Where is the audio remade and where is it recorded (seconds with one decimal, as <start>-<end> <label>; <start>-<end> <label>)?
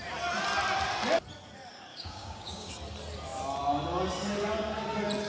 0.0-1.9 recorded; 1.9-2.7 remade; 2.7-5.3 recorded